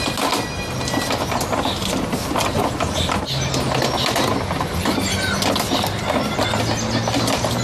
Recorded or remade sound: recorded